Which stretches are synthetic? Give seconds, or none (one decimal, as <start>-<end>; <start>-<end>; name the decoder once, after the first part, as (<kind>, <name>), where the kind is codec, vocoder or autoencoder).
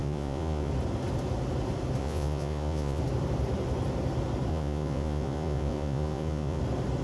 0.0-0.7 (vocoder, Vocos); 2.0-3.0; 4.5-6.6